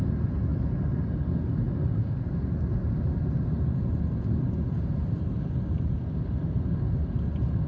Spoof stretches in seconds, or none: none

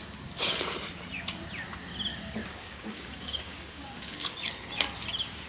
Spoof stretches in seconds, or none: 2.1-4.5

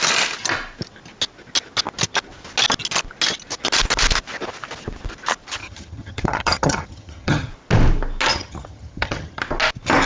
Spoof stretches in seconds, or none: 5.6-7.5; 8.3-9.4

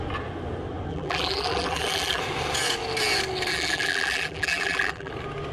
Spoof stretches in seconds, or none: 0.9-2.2; 3.5-5.1

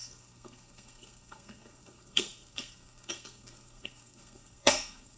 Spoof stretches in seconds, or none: 0.0-5.2

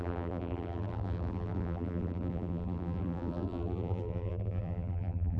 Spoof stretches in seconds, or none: 0.0-5.4